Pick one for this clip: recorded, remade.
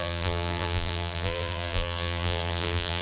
remade